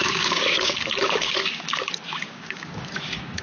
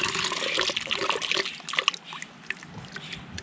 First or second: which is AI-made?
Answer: first